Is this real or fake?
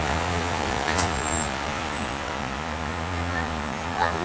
fake